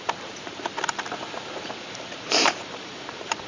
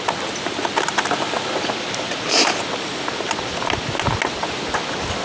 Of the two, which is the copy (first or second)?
first